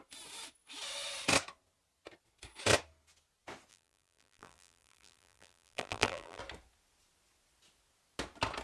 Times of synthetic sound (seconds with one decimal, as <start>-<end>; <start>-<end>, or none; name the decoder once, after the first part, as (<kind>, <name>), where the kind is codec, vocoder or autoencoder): 3.7-6.4 (vocoder, BigVGAN v2)